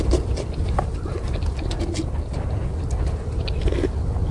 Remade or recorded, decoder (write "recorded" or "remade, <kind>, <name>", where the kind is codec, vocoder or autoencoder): recorded